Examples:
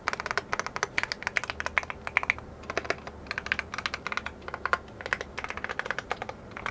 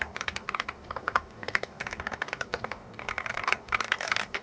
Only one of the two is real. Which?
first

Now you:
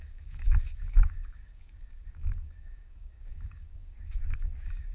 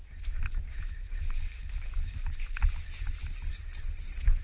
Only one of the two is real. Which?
second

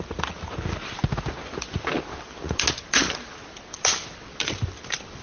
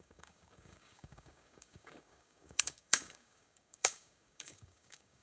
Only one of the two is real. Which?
first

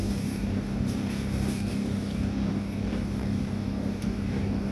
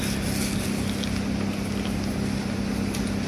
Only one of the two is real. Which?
second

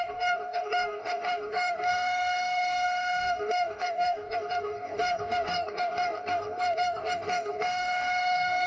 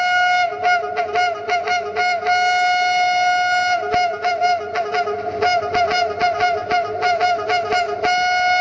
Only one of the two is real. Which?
second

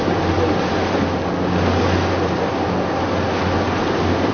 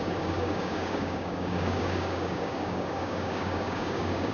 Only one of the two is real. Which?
first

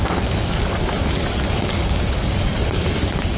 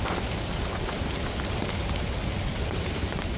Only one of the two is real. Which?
second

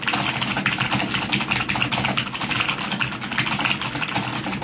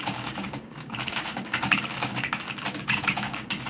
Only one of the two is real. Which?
first